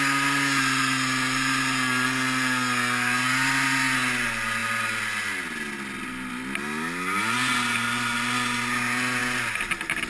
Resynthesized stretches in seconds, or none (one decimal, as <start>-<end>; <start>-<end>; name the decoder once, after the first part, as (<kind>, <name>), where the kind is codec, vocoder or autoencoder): none